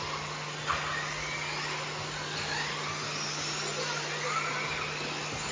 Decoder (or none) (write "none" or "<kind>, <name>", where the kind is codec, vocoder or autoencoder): none